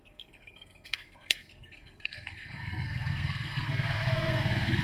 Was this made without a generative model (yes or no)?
no